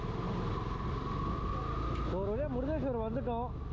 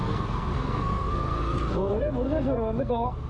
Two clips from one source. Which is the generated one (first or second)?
second